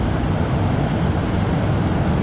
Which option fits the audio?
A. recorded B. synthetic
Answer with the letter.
A